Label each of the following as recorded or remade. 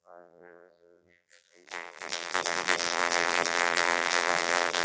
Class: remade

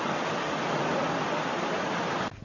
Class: recorded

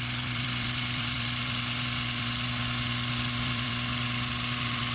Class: remade